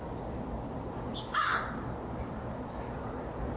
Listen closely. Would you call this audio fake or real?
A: real